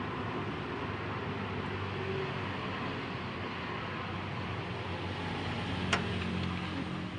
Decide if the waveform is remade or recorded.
recorded